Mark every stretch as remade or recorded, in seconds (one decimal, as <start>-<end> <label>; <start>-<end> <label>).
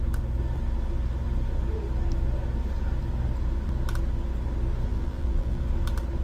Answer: 0.0-4.9 recorded; 4.9-5.6 remade; 5.6-6.2 recorded